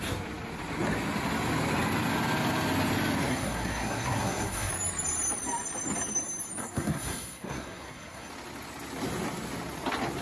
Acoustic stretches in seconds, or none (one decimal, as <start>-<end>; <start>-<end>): 0.0-3.3; 4.7-6.6; 8.3-10.2